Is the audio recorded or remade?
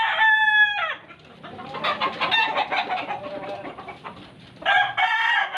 recorded